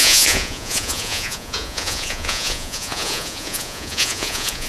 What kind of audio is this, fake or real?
fake